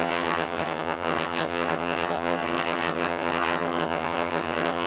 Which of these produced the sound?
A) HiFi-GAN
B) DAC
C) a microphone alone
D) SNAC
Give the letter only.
A